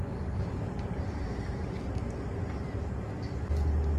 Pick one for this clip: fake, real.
real